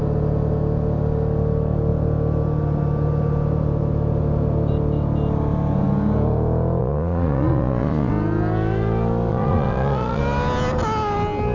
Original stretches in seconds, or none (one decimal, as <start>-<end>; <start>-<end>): 0.0-6.8; 8.1-9.3; 10.2-11.5